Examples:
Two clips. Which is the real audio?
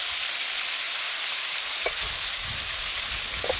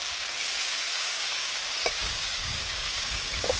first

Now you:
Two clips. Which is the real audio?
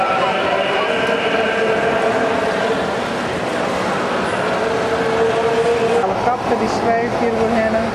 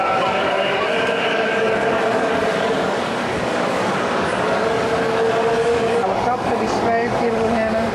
first